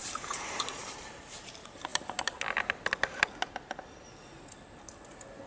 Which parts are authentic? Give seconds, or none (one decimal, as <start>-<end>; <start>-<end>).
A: 1.9-5.5